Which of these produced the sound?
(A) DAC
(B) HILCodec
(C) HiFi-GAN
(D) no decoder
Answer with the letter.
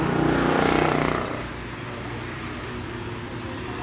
D